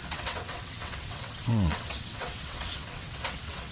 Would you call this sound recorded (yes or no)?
no